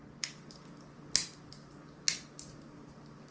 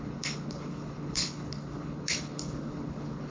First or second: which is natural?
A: first